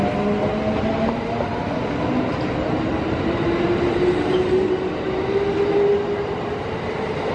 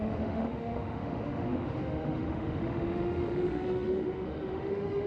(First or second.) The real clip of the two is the first